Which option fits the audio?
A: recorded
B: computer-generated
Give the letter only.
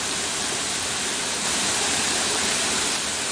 B